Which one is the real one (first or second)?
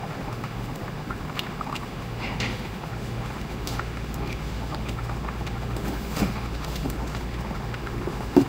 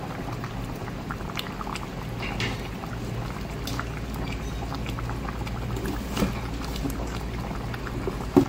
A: second